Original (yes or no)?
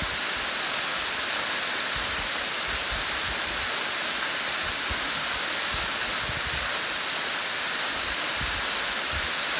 yes